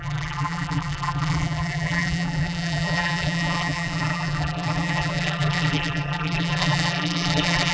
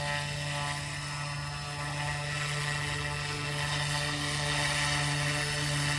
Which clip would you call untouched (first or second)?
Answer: second